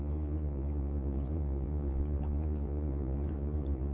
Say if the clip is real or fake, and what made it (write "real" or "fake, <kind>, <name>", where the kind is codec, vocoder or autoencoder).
fake, vocoder, Vocos